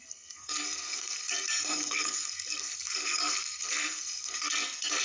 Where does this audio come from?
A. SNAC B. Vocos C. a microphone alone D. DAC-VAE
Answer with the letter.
A